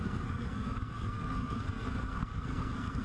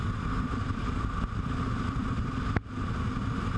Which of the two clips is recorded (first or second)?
second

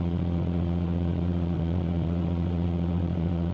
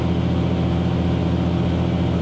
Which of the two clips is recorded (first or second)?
second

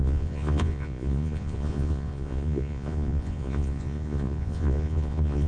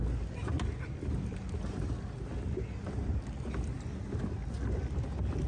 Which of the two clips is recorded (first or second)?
second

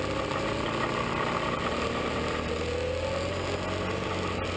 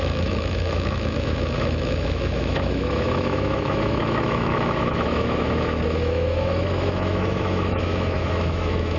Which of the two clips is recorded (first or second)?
first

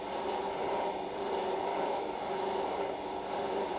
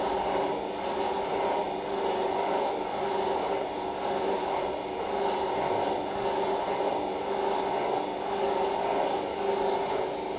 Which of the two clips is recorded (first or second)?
second